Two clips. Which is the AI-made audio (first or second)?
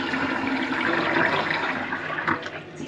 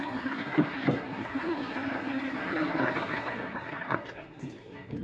second